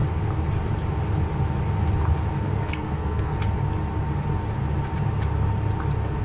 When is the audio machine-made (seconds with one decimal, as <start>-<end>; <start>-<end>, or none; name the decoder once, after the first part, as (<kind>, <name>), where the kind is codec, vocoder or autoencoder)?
2.4-3.3 (codec, SNAC)